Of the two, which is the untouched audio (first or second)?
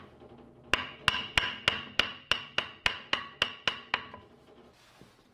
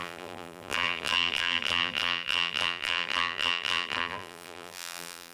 first